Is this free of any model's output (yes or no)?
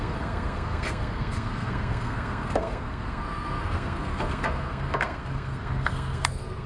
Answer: no